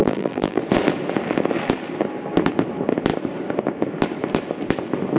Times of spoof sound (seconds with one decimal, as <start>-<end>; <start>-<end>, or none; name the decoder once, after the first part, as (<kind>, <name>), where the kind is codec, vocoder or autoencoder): 0.0-0.6 (vocoder, BigVGAN v2)